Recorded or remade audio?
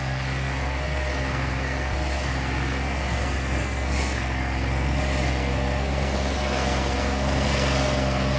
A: remade